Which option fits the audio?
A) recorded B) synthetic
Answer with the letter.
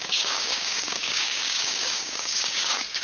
B